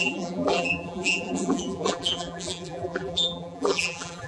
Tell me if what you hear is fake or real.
fake